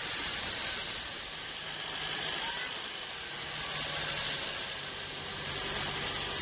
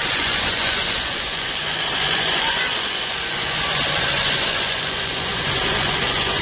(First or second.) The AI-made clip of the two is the second